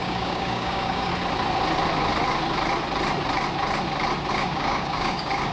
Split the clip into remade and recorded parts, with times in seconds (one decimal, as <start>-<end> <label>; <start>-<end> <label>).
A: 0.0-1.1 remade; 1.1-4.3 recorded; 4.3-5.5 remade